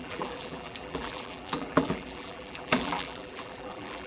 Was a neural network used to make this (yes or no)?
yes